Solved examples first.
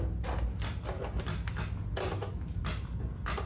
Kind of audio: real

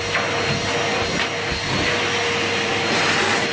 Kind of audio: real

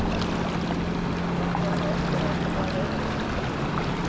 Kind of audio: real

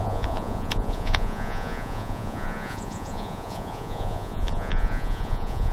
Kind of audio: fake